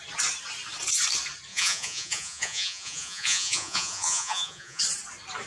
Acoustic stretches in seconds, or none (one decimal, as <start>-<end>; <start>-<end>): 0.0-1.5; 4.8-5.5